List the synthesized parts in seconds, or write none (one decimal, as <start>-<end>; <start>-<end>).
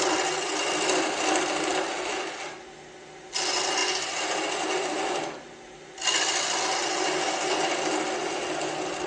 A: none